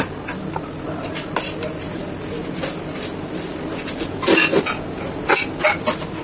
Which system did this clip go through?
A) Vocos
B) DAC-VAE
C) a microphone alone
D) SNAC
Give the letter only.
C